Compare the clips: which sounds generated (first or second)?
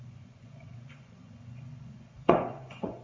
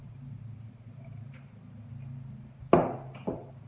first